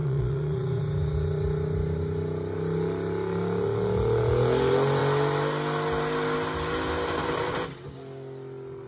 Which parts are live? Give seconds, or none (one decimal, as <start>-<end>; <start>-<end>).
0.8-8.9